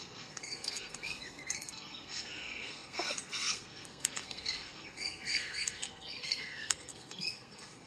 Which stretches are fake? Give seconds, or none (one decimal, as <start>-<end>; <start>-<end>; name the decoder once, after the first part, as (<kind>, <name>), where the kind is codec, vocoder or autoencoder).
0.0-7.9 (codec, SNAC)